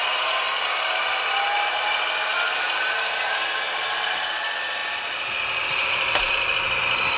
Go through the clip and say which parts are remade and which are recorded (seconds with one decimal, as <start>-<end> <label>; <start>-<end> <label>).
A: 0.0-7.2 recorded